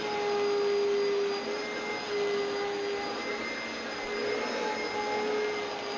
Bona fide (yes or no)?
yes